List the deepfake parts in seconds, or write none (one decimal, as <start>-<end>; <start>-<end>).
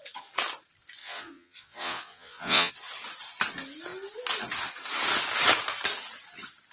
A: 1.0-2.7